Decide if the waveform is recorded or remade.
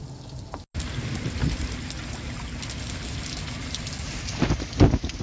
recorded